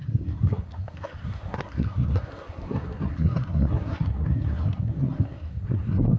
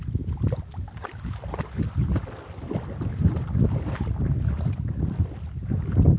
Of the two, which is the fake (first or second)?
first